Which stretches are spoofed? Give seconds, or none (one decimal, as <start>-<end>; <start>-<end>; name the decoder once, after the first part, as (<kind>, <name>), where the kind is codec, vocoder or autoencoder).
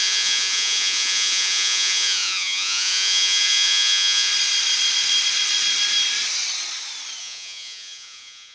0.0-4.3 (vocoder, Vocos); 7.2-8.5